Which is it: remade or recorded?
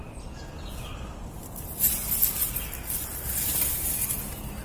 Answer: recorded